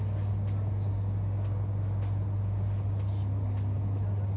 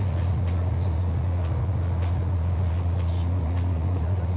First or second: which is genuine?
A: first